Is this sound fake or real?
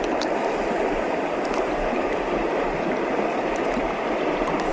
real